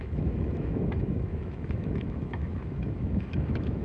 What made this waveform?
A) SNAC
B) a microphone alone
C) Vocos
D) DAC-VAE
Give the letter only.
D